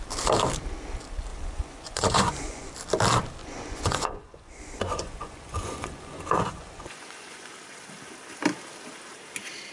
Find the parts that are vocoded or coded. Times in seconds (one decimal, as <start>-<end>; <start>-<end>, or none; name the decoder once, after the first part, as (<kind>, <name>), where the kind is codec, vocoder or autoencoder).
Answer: 1.3-2.7 (vocoder, Vocos); 3.4-7.5